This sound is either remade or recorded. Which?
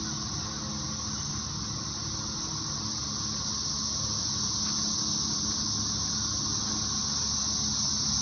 recorded